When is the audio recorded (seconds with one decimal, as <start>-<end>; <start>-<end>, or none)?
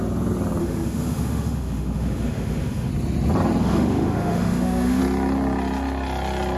0.0-0.6; 2.9-3.6; 5.0-6.6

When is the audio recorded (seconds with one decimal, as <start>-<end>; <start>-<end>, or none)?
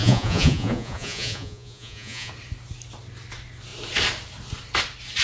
2.3-5.2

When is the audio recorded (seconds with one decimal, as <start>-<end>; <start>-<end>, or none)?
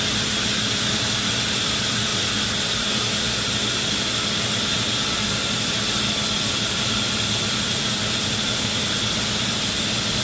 0.0-10.2